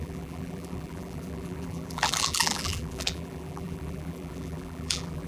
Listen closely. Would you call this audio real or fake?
fake